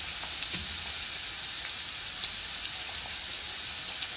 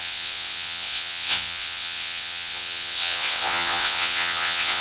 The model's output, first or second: second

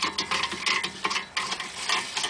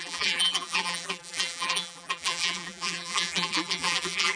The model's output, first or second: second